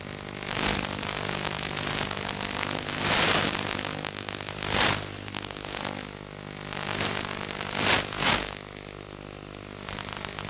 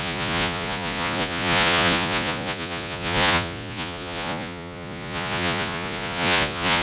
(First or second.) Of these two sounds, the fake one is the second